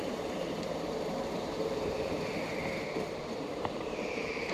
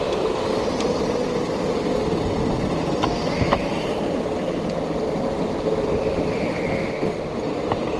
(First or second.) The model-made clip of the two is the first